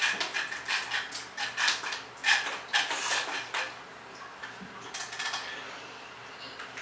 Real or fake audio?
real